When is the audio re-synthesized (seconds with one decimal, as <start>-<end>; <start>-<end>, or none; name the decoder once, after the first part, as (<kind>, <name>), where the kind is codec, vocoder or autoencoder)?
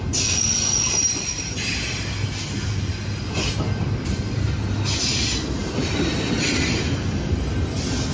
none